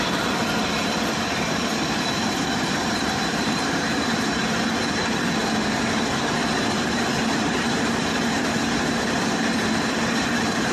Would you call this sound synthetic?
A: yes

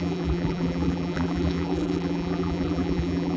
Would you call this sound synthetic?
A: yes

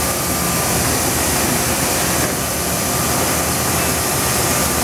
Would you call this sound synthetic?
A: no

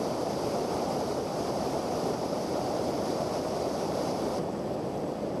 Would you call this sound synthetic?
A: yes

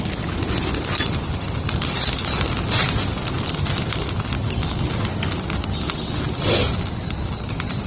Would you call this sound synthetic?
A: yes